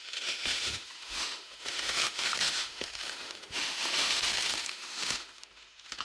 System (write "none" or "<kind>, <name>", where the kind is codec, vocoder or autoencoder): autoencoder, DAC-VAE